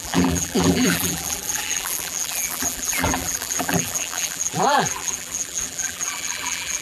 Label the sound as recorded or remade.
remade